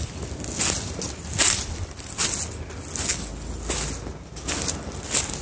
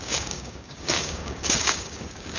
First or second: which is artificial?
second